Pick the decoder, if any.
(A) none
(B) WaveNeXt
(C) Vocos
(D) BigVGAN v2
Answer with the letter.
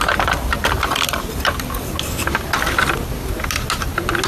A